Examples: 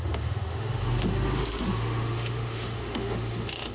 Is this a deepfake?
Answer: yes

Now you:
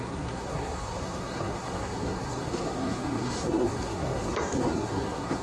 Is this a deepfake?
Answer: yes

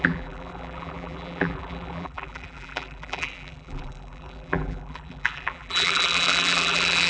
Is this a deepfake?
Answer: yes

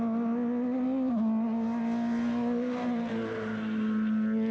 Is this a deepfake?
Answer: no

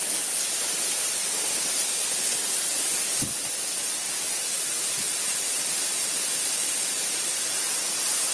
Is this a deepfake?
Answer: no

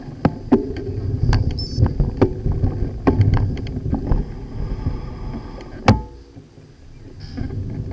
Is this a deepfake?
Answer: no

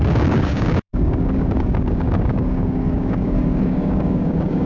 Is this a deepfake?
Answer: yes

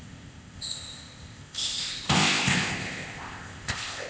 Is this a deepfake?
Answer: yes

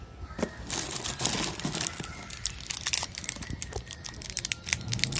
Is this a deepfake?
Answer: no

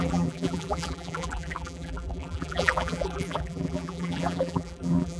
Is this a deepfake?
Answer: yes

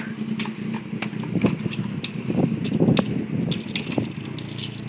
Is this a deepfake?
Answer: no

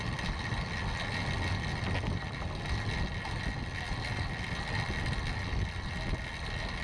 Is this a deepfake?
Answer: no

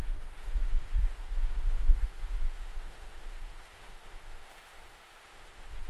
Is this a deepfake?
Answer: yes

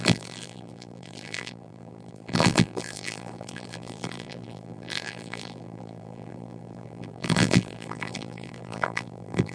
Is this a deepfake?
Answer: yes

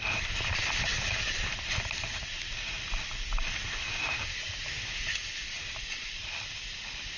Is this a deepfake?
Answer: no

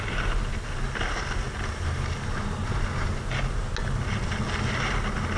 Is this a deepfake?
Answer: no